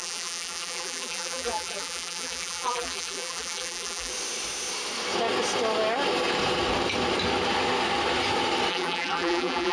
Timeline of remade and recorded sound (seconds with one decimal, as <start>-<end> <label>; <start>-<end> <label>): 0.0-4.1 remade; 4.1-8.7 recorded; 8.7-9.7 remade